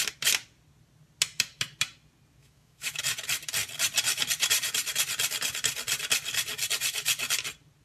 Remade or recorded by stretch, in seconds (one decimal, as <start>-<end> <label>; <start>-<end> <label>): 0.0-2.4 recorded; 2.4-3.0 remade; 3.0-7.8 recorded